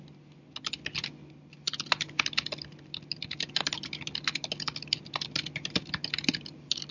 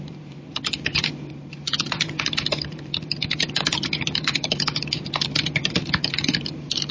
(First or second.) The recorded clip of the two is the first